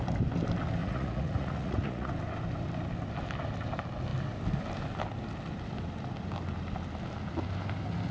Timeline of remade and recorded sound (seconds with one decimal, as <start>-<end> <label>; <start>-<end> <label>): 0.0-0.8 recorded; 0.8-2.1 remade; 2.1-8.1 recorded